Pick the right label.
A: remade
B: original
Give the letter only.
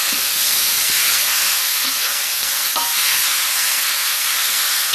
A